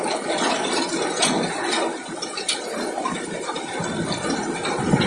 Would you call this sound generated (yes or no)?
no